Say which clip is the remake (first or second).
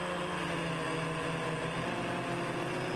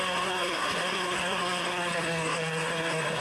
second